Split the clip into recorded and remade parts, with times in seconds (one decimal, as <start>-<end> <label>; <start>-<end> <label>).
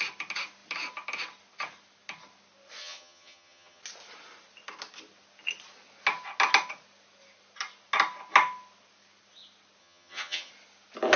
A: 0.0-2.8 recorded; 2.8-3.8 remade; 3.8-9.8 recorded; 9.8-10.5 remade; 10.5-11.2 recorded